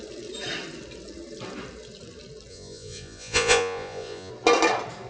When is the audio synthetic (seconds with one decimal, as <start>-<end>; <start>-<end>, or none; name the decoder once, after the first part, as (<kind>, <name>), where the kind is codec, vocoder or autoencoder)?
2.5-4.3 (vocoder, Vocos)